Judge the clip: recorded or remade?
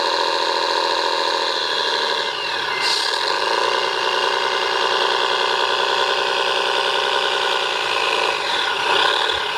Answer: recorded